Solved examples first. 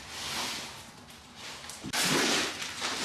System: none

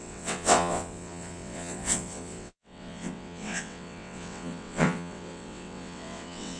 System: vocoder, WaveNeXt